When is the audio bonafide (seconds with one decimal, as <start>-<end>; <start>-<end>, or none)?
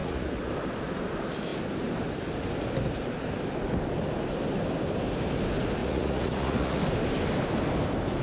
0.5-5.8; 6.8-8.2